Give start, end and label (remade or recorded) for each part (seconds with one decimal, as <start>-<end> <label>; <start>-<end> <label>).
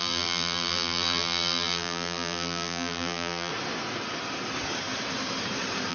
0.0-3.5 remade; 3.5-5.9 recorded